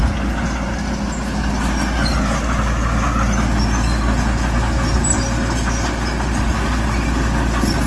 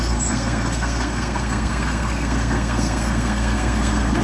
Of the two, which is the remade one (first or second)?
second